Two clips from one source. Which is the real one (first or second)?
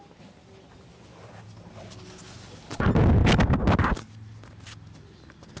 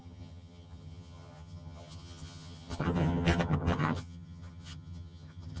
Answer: first